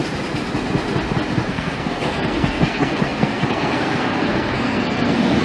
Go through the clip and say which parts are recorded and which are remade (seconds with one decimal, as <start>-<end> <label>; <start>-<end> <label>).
0.0-1.5 recorded; 1.5-5.4 remade